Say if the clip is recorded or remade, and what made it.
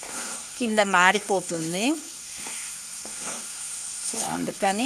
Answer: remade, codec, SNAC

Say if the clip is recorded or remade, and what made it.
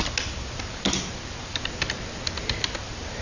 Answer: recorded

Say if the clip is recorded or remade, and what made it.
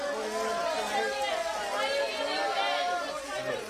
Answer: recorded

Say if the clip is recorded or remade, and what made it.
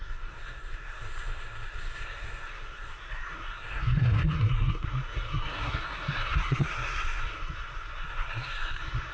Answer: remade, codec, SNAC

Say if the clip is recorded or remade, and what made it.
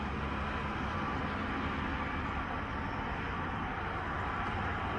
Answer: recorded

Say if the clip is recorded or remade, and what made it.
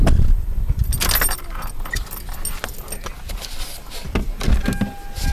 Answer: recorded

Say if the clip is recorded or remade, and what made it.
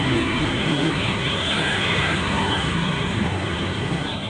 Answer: remade, codec, SNAC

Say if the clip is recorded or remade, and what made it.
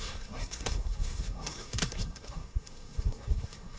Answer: remade, codec, SNAC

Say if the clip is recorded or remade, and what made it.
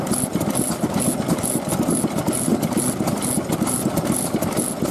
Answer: recorded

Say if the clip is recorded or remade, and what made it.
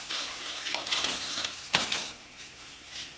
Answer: remade, codec, SNAC